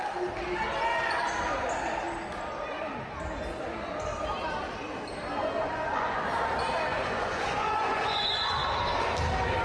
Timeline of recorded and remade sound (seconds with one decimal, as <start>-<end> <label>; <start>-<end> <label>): 0.0-5.4 recorded; 5.4-6.2 remade; 6.2-6.9 recorded; 6.9-8.6 remade; 8.6-9.6 recorded